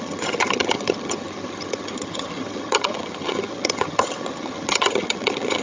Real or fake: fake